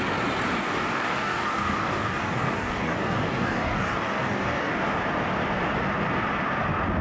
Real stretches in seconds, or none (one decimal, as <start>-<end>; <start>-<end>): 0.0-0.5; 4.7-7.0

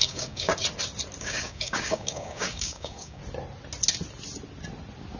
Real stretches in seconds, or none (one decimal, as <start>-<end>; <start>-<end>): 0.5-1.2; 3.2-5.2

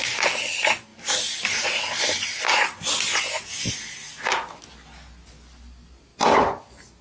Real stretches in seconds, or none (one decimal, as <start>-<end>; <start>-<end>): 0.0-7.0

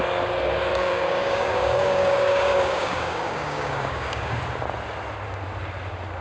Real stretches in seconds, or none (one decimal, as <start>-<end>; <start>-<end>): 0.0-0.7; 4.4-6.2

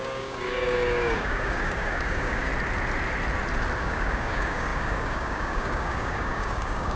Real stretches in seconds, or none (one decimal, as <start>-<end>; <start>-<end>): 2.5-3.8

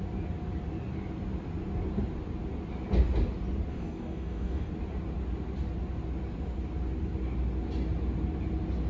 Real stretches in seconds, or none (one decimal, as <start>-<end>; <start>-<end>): 0.0-3.7; 4.7-8.9

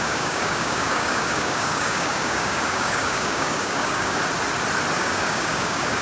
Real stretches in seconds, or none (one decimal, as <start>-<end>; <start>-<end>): 4.2-5.0

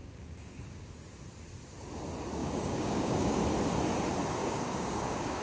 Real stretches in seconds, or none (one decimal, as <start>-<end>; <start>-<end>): 0.9-2.4; 3.4-4.4